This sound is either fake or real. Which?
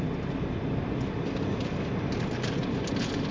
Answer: real